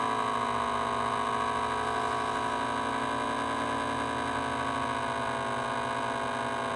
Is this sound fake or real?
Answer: real